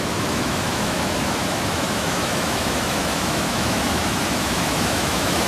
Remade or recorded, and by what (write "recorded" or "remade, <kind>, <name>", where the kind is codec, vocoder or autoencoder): remade, autoencoder, DAC-VAE